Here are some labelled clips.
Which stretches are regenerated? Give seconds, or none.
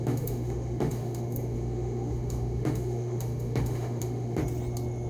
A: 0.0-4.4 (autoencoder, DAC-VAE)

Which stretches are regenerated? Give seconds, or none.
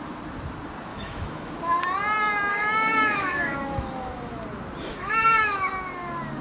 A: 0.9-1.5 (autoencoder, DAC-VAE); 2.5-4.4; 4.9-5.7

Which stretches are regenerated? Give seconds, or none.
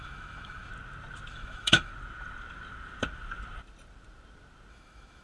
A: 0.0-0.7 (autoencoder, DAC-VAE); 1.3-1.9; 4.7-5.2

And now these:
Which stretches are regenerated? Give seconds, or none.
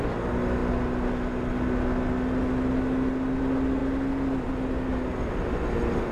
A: none